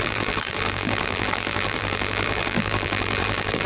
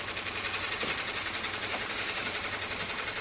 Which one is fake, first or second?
first